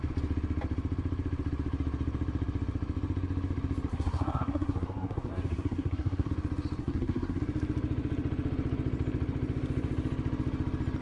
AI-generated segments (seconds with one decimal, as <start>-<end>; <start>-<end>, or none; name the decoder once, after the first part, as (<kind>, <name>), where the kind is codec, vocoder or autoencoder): 3.9-6.3 (codec, SNAC); 6.8-7.4